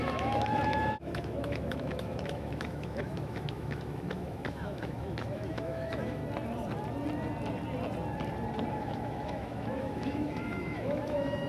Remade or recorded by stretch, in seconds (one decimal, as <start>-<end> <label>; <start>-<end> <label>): 0.0-6.2 remade; 6.2-8.7 recorded; 8.7-11.5 remade